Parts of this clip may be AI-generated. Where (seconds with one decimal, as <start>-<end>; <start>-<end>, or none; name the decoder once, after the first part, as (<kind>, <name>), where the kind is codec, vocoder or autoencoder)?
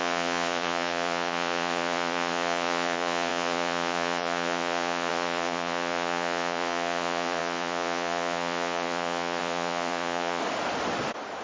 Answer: 0.0-10.4 (vocoder, Vocos)